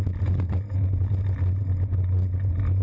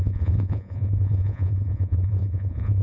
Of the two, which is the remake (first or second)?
second